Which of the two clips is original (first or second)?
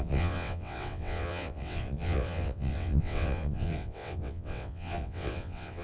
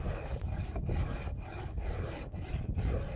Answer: second